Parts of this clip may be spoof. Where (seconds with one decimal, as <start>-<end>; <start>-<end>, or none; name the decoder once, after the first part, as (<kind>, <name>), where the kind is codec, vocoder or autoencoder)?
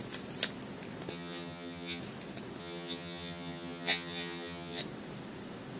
1.1-2.0 (vocoder, HiFi-GAN); 2.6-4.8